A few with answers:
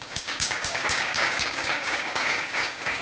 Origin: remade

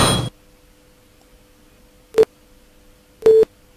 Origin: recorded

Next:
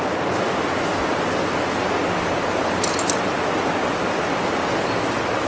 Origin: recorded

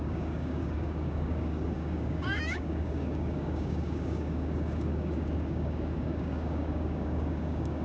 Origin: remade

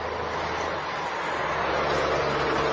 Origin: recorded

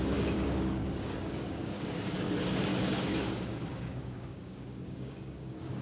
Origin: remade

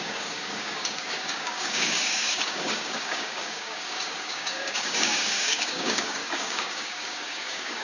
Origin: remade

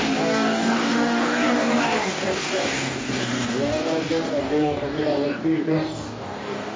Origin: remade